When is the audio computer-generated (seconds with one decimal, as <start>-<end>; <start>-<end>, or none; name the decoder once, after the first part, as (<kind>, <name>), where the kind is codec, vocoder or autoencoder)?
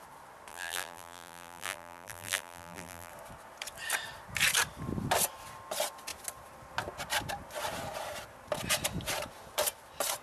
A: 0.5-3.1 (vocoder, BigVGAN v2)